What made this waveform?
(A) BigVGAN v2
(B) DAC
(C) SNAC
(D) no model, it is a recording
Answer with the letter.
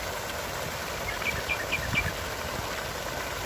D